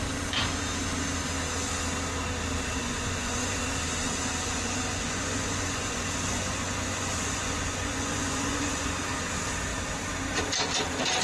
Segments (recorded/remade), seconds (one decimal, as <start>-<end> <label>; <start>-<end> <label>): 0.0-2.8 recorded; 2.8-3.6 remade; 3.6-4.4 recorded; 4.4-9.0 remade; 9.0-11.2 recorded